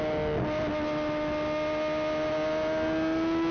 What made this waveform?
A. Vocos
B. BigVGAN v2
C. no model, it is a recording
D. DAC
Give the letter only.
C